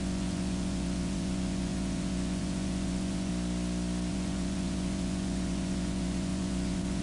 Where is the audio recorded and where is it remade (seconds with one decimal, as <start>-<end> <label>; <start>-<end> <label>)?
0.0-3.3 remade; 3.3-4.1 recorded; 4.1-7.0 remade